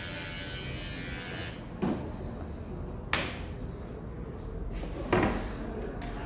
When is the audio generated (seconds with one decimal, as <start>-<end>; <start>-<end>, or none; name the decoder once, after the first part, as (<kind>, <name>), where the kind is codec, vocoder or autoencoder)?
none